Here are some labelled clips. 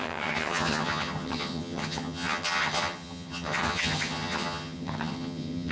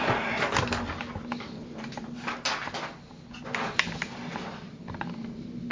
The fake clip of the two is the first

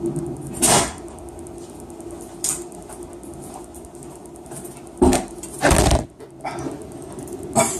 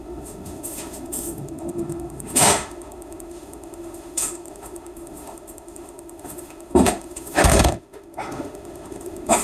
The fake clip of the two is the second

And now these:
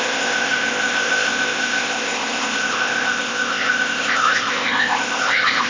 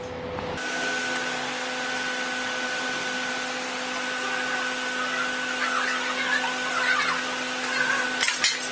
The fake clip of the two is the first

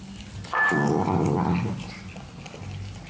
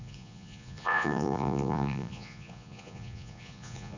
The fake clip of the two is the second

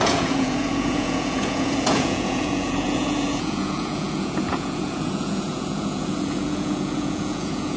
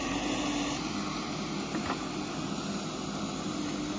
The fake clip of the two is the first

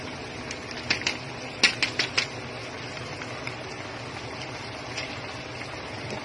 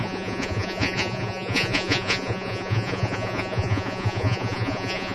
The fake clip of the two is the second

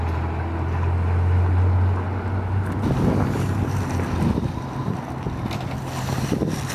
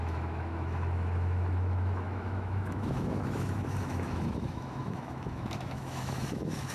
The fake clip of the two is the second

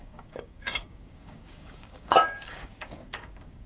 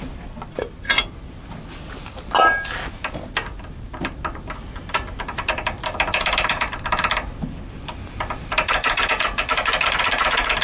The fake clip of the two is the first